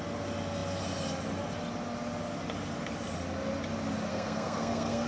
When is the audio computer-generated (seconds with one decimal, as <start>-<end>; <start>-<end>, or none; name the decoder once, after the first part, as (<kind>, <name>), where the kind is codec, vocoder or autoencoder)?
4.1-5.1 (codec, SNAC)